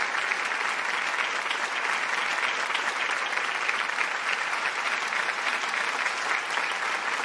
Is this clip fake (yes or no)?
no